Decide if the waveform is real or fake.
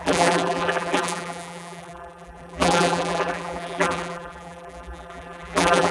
fake